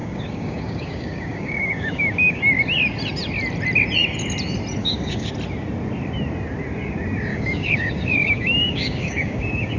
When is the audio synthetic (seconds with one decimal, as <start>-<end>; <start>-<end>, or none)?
0.0-2.4; 4.8-5.3; 7.3-9.8